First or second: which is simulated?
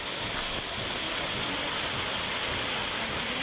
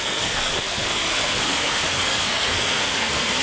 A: second